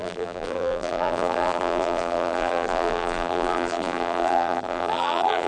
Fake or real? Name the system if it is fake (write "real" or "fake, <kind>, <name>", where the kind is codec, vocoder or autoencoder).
fake, vocoder, BigVGAN v2